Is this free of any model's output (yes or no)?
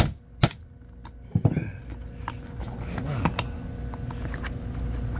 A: yes